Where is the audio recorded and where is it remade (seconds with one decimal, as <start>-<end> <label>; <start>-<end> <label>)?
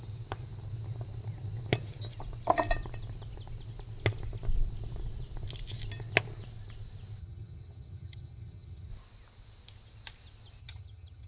0.0-7.2 recorded; 7.2-8.9 remade; 8.9-10.6 recorded; 10.6-11.3 remade